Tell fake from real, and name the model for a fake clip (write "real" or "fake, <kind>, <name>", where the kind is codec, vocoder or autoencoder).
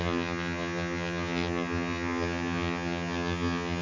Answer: fake, vocoder, HiFi-GAN